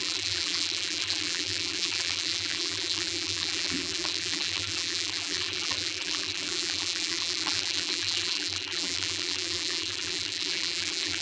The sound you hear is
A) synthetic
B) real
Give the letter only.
A